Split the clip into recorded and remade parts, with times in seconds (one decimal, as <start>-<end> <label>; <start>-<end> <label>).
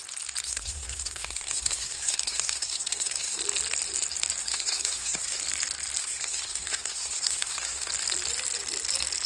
0.0-0.4 recorded; 0.4-3.4 remade; 3.4-4.4 recorded; 4.4-5.4 remade; 5.4-6.0 recorded; 6.0-7.9 remade; 7.9-9.3 recorded